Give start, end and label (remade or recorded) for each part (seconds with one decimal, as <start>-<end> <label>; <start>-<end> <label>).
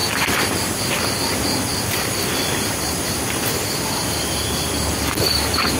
0.0-1.7 recorded; 1.7-4.2 remade; 4.2-5.8 recorded